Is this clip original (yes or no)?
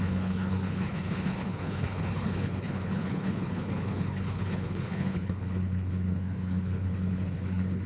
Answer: no